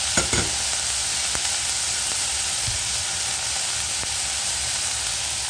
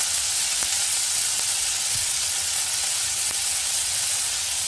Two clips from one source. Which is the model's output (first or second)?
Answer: second